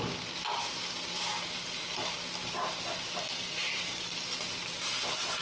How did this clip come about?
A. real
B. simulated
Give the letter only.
B